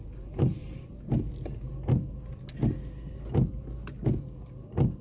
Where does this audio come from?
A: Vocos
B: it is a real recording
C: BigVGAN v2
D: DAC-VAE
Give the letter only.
B